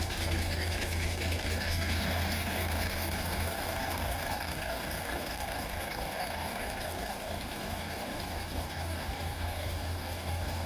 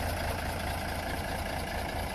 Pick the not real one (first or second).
first